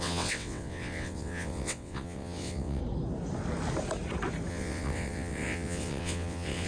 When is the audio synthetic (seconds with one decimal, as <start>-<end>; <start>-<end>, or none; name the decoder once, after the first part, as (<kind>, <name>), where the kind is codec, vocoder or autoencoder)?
0.0-2.8 (vocoder, WaveNeXt); 4.5-6.7